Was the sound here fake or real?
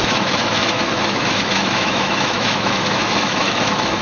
fake